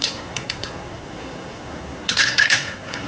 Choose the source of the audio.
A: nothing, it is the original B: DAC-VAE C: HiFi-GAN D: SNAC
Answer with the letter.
D